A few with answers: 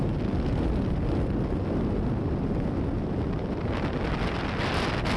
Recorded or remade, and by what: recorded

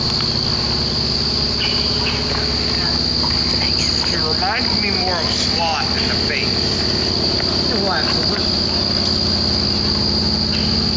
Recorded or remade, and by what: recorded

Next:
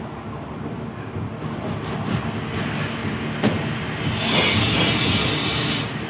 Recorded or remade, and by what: recorded